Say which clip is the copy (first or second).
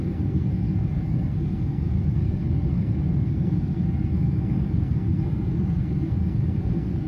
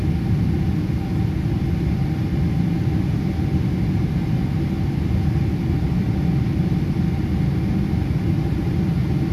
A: first